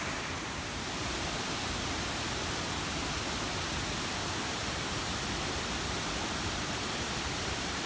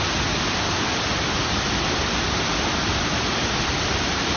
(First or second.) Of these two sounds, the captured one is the second